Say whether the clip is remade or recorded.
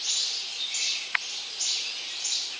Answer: recorded